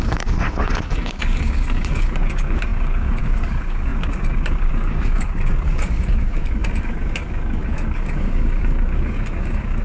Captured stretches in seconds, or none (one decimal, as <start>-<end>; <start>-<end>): none